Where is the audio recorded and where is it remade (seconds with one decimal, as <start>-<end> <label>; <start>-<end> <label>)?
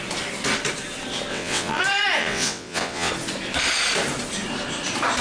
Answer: 0.0-1.3 recorded; 1.3-1.8 remade; 1.8-2.2 recorded; 2.2-3.1 remade; 3.1-5.2 recorded